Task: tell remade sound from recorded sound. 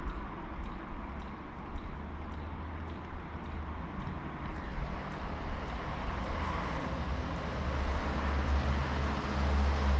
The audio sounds recorded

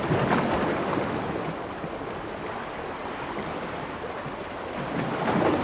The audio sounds recorded